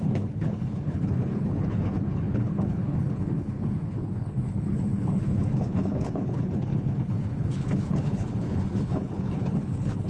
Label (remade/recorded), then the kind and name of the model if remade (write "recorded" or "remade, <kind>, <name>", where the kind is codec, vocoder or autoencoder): remade, codec, HILCodec